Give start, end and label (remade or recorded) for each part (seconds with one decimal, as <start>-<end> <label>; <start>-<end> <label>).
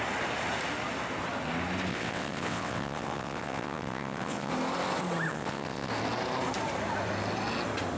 0.0-1.9 recorded; 1.9-4.5 remade; 4.5-5.3 recorded; 5.3-5.9 remade; 5.9-8.0 recorded